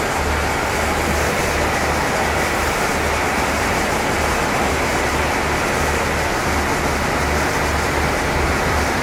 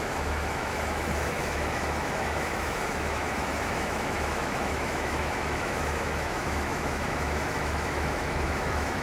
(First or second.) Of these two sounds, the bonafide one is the first